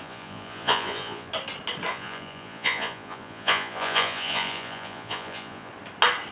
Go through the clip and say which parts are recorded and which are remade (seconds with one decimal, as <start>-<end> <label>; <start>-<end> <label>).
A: 0.0-1.3 remade; 1.3-1.9 recorded; 1.9-5.7 remade; 5.7-6.3 recorded